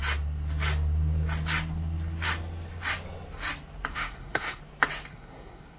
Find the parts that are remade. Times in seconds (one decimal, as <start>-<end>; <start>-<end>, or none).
3.9-4.6; 5.1-5.8

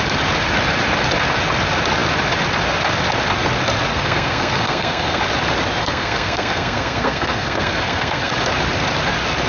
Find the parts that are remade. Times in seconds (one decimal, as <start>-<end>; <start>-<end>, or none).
3.9-5.2; 5.8-8.3

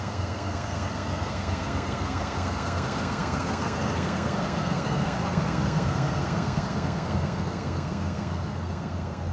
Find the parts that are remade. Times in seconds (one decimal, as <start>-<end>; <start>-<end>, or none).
0.0-9.3